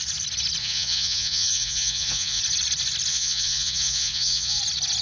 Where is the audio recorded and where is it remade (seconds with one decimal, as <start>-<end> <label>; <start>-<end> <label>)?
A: 0.0-0.6 recorded; 0.6-2.4 remade; 2.4-3.1 recorded; 3.1-4.6 remade; 4.6-5.0 recorded